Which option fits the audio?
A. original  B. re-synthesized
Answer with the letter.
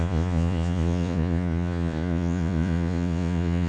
B